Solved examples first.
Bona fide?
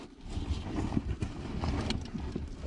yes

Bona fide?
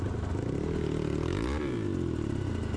yes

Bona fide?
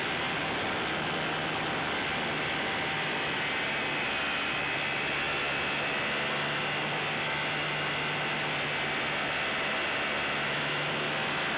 yes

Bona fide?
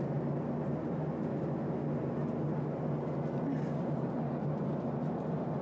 yes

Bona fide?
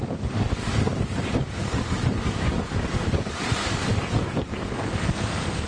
no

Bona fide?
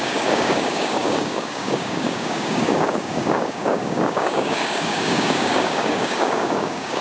no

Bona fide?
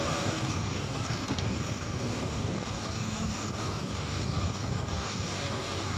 no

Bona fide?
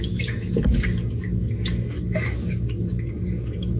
no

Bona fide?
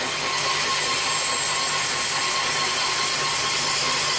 yes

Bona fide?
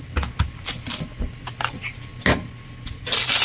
yes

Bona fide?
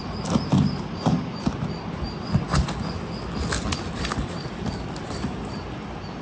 yes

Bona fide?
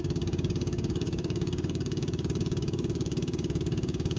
no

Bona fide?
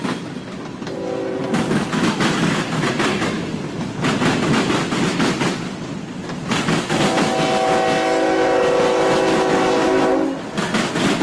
yes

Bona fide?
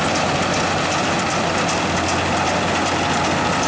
yes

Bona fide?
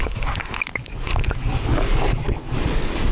no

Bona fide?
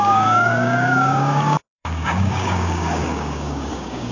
no